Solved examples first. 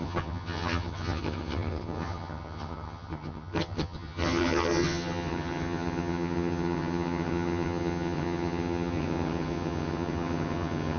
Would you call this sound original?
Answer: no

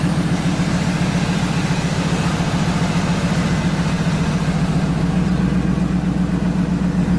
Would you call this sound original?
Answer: yes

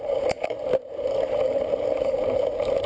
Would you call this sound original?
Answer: no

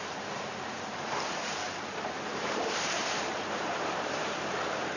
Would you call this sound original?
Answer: no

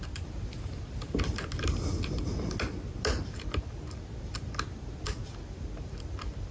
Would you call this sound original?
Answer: yes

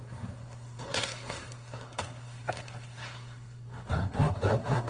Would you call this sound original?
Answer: no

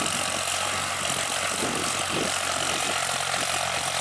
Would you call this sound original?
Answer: yes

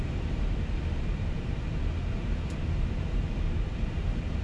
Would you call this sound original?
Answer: no